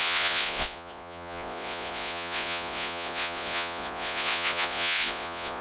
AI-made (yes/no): yes